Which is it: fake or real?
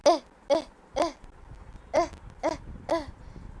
real